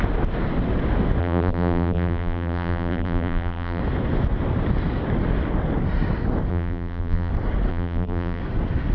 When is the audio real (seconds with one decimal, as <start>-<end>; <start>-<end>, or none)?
0.0-1.2; 3.8-6.5; 7.3-7.7; 8.4-8.9